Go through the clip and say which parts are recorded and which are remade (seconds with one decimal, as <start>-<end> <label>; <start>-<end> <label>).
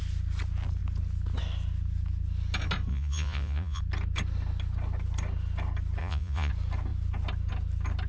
0.0-2.9 recorded; 2.9-3.8 remade; 3.8-6.0 recorded; 6.0-6.5 remade; 6.5-8.1 recorded